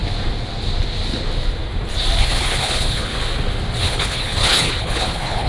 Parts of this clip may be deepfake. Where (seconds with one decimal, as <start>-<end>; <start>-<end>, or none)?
2.2-3.1; 3.8-5.5